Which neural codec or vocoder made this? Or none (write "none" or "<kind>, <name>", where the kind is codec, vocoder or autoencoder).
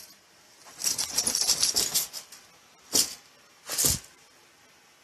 none